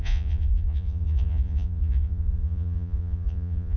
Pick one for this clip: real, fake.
fake